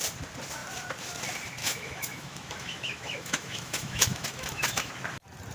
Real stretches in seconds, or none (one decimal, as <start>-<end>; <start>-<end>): 0.0-1.6; 4.9-5.5